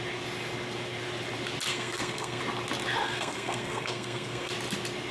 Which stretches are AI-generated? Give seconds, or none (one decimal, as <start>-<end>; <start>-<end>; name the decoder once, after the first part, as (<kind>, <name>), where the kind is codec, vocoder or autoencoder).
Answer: 1.7-2.4 (codec, SNAC); 3.0-4.5

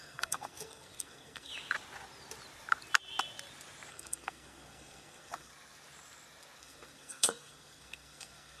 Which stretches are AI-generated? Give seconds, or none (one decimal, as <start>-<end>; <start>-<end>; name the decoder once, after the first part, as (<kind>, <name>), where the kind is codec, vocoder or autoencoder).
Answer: 0.0-1.5 (codec, SNAC); 3.9-5.5; 6.6-8.6